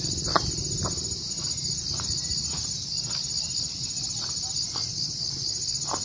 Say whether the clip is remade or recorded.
recorded